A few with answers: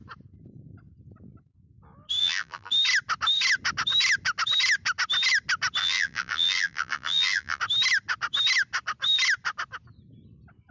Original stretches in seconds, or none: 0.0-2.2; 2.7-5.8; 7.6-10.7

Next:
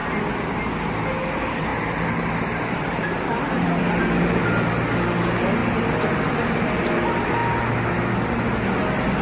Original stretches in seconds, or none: 0.0-1.7; 3.8-5.6; 6.8-9.2

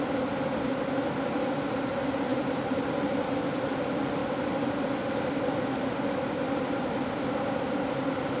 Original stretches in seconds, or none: 0.0-2.3; 3.2-8.4

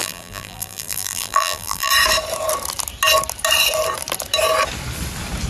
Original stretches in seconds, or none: 1.9-5.5